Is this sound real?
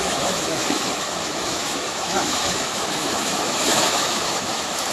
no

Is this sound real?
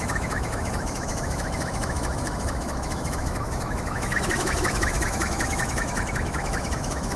no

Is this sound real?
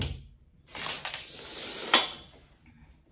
yes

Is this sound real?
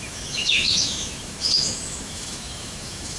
no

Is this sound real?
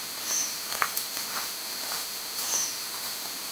no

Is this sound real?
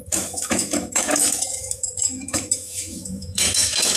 no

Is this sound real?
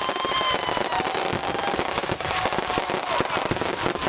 yes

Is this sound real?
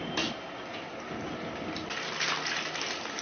yes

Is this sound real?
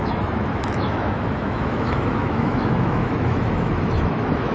no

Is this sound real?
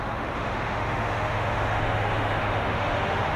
no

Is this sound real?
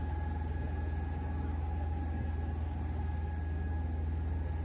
yes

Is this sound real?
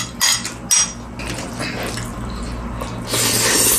yes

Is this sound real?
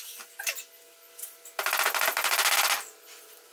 yes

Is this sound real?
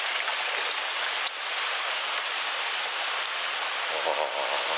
yes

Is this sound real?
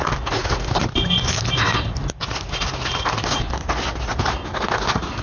yes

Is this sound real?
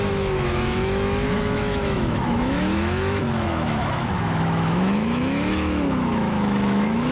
no